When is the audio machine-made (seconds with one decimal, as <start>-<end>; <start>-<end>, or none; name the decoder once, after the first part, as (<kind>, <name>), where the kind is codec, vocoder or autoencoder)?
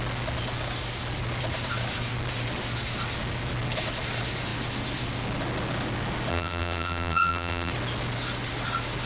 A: 6.3-7.7 (vocoder, BigVGAN v2)